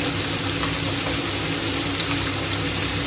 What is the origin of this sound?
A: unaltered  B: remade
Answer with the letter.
A